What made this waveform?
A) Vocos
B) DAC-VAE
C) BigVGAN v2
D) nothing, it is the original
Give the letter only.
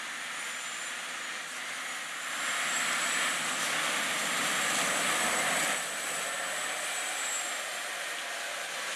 D